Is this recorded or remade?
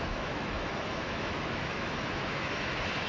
remade